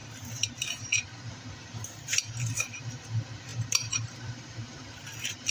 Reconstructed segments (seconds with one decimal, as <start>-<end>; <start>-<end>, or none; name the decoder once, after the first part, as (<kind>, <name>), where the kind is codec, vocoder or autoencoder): 0.0-5.5 (vocoder, BigVGAN v2)